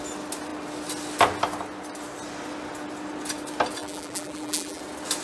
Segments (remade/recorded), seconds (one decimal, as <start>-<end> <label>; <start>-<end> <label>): 0.0-3.8 recorded; 3.8-4.8 remade; 4.8-5.2 recorded